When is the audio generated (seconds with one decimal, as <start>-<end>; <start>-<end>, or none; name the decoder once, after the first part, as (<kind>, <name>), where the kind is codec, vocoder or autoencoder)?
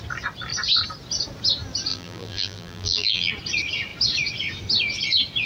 1.9-3.3 (vocoder, BigVGAN v2)